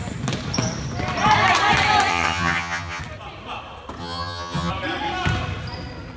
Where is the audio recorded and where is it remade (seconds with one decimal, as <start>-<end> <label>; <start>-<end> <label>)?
0.0-2.1 recorded; 2.1-3.0 remade; 3.0-4.0 recorded; 4.0-4.7 remade; 4.7-6.2 recorded